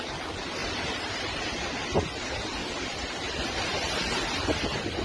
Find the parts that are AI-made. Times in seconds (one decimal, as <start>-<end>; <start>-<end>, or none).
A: 0.6-1.4; 2.6-4.2